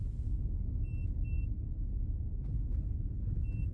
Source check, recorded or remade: recorded